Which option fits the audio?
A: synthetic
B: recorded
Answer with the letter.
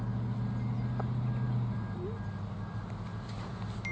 B